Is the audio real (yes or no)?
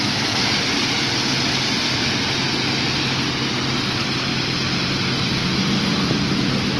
yes